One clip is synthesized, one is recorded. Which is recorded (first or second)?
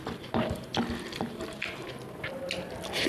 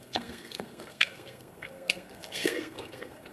first